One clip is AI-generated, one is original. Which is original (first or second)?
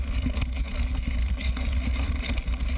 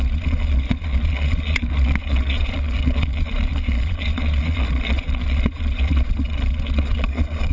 first